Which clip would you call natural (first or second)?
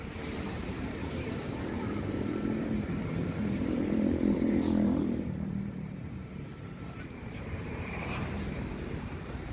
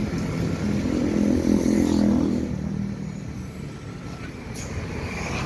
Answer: second